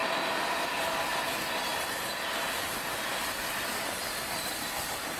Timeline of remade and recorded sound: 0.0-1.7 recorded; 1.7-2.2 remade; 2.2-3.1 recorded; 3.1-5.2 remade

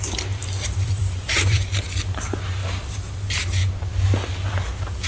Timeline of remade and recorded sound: 0.0-0.4 recorded; 0.4-1.7 remade; 1.7-5.1 recorded